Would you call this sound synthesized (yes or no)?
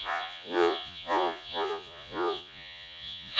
yes